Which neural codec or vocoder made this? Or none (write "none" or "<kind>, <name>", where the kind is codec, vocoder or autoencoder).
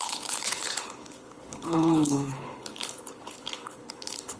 codec, HILCodec